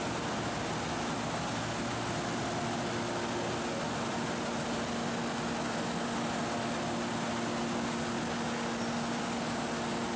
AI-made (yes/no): no